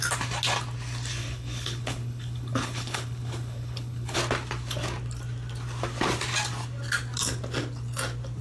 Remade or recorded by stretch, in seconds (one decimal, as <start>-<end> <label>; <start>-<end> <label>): 0.0-1.2 recorded; 1.2-4.2 remade; 4.2-8.4 recorded